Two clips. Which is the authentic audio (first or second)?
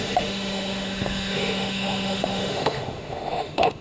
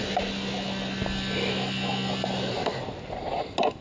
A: second